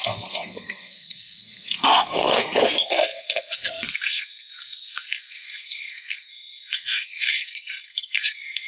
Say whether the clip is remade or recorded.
remade